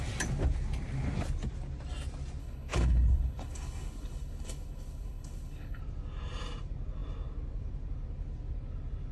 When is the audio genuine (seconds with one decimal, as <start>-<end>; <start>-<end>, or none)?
0.0-2.4; 5.8-9.1